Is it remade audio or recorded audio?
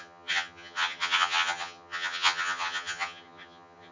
remade